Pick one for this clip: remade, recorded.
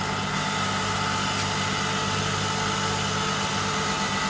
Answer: recorded